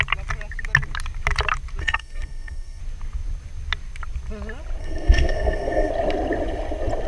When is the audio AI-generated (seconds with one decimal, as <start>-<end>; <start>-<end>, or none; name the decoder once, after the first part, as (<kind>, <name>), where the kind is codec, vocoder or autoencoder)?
1.8-2.8 (codec, SNAC); 4.8-5.9